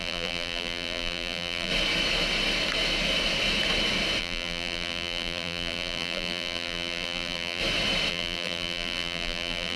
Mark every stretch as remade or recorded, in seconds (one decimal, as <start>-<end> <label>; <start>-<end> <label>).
0.0-1.7 remade; 1.7-4.2 recorded; 4.2-7.6 remade; 7.6-8.1 recorded; 8.1-9.8 remade